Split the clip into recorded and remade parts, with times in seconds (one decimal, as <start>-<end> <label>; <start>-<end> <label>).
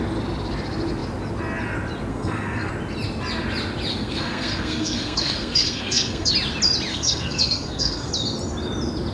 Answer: 0.0-2.1 recorded; 2.1-2.7 remade; 2.7-3.9 recorded; 3.9-6.3 remade; 6.3-6.9 recorded; 6.9-8.1 remade; 8.1-9.1 recorded